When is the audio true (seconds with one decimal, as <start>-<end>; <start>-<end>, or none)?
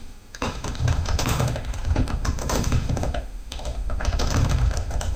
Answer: none